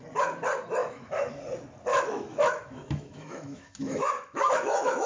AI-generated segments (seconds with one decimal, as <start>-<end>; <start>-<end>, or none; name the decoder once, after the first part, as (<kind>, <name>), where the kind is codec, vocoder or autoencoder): 0.8-1.4 (autoencoder, DAC-VAE); 1.9-5.1